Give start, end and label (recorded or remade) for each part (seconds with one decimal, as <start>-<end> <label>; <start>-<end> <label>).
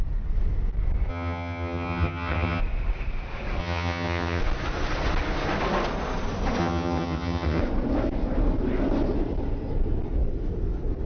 0.0-1.1 recorded; 1.1-2.6 remade; 2.6-3.6 recorded; 3.6-4.4 remade; 4.4-6.6 recorded; 6.6-7.6 remade; 7.6-11.1 recorded